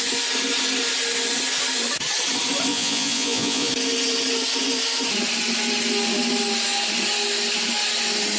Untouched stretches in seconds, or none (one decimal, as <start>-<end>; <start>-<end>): 0.0-2.7; 3.7-8.4